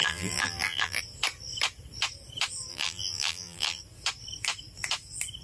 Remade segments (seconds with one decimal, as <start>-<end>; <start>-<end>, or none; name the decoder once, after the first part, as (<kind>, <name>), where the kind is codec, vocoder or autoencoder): 0.0-1.0 (vocoder, BigVGAN v2); 2.7-3.8